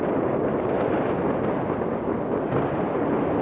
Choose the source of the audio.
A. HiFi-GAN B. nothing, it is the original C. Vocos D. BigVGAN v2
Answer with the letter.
B